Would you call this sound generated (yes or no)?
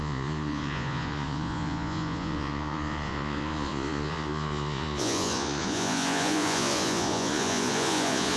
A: yes